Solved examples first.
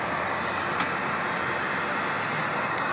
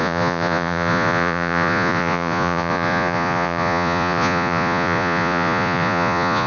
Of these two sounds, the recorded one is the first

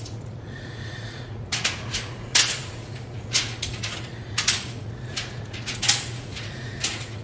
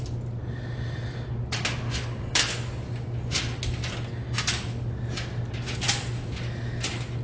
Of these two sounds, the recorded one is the second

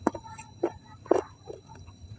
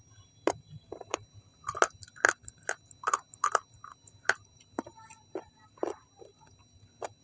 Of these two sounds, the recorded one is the second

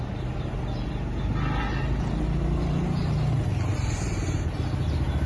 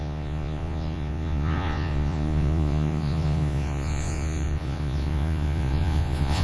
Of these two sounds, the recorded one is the first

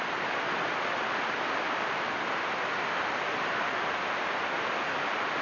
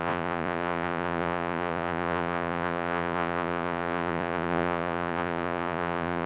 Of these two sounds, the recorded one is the first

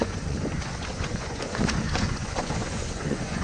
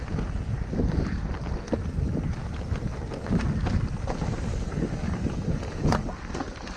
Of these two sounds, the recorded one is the second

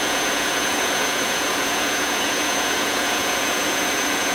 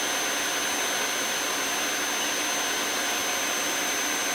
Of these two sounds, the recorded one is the second